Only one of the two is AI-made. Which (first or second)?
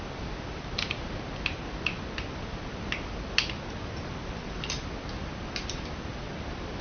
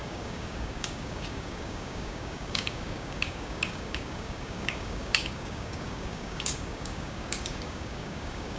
second